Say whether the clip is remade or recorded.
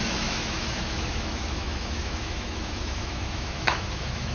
remade